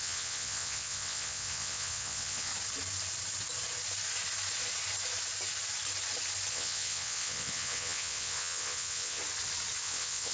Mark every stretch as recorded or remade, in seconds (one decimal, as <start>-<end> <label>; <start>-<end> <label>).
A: 0.0-2.5 remade; 2.5-6.5 recorded; 6.5-9.2 remade; 9.2-9.8 recorded; 9.8-10.3 remade